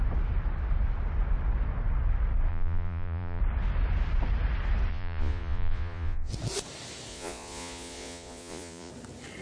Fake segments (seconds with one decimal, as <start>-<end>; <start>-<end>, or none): 2.5-3.4; 4.9-6.3; 7.1-8.9